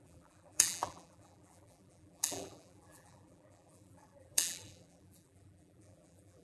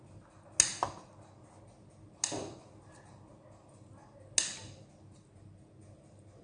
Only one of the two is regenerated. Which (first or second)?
first